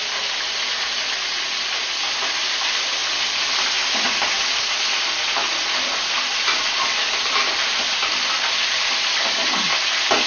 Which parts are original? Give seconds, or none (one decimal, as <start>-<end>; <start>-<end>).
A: 0.0-10.3